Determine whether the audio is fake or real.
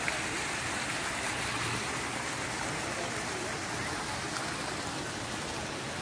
real